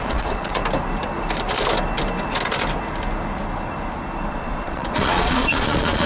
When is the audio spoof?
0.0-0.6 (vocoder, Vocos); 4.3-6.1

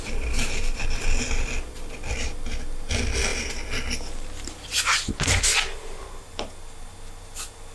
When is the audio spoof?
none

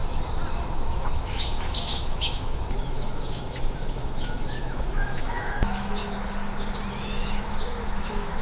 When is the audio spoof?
1.0-6.0 (autoencoder, DAC-VAE); 6.9-8.4

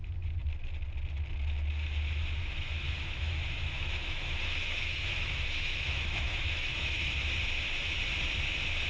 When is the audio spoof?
2.4-7.2 (autoencoder, DAC-VAE)

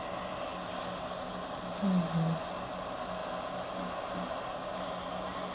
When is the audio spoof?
none